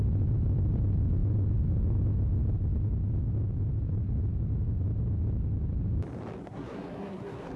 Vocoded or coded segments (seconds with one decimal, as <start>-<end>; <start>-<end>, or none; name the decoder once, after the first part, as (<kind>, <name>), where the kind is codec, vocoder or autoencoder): 6.4-7.6 (codec, SNAC)